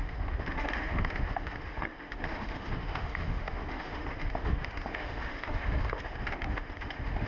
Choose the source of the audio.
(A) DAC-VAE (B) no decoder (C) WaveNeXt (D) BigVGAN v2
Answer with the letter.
A